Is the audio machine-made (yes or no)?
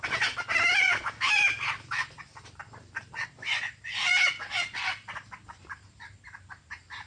no